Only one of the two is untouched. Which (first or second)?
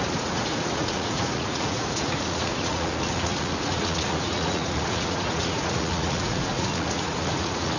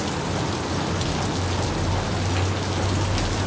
second